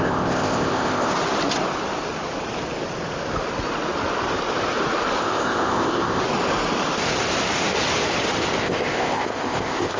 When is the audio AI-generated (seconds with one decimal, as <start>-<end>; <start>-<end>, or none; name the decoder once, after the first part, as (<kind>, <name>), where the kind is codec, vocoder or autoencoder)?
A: 0.0-1.1 (codec, ZipCodec); 5.2-6.2; 8.6-10.0